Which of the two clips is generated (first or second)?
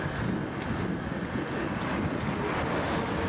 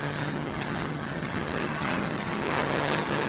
second